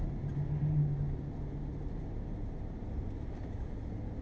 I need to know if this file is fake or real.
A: real